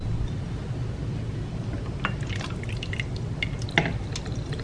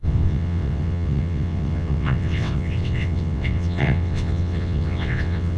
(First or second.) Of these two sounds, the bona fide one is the first